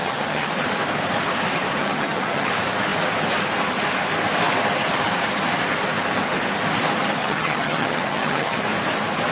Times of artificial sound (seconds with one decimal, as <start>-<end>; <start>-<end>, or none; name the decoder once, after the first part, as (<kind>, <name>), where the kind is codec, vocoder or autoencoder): 0.0-0.5 (vocoder, HiFi-GAN); 1.8-2.5; 7.2-8.6